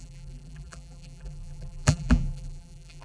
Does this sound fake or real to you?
fake